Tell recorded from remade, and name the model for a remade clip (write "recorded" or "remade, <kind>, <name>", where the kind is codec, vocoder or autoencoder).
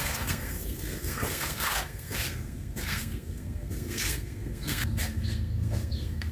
remade, codec, SNAC